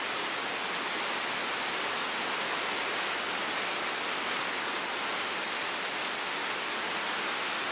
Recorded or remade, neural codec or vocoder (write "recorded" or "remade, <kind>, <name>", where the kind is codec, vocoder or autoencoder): recorded